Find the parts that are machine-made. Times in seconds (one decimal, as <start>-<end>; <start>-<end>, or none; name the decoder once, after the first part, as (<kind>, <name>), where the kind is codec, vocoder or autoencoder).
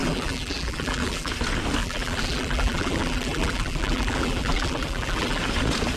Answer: 0.0-1.3 (vocoder, BigVGAN v2); 1.8-5.4